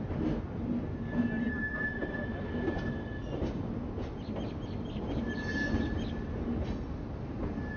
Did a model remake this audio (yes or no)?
no